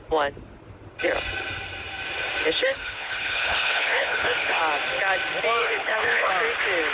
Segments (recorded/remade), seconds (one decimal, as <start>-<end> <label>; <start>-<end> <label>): 0.0-2.6 recorded; 2.6-4.6 remade; 4.6-5.6 recorded; 5.6-6.3 remade; 6.3-6.9 recorded